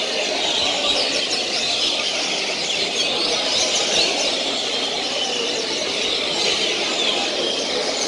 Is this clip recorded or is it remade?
recorded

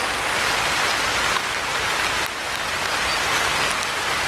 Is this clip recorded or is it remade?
recorded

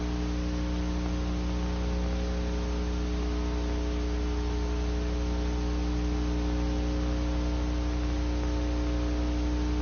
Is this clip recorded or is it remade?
recorded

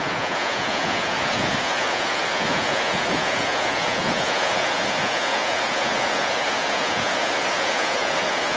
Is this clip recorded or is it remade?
remade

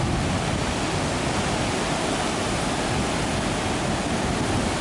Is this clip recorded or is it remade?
recorded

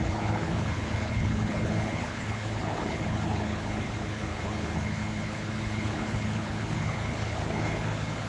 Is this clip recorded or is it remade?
remade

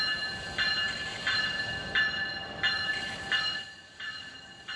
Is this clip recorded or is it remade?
recorded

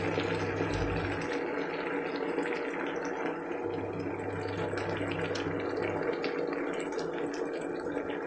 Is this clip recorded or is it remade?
recorded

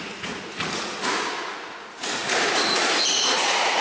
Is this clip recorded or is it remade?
remade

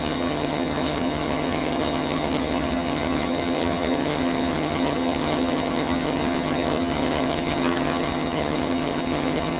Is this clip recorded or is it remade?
remade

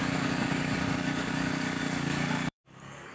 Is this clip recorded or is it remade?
remade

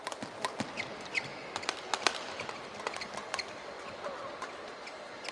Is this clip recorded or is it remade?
recorded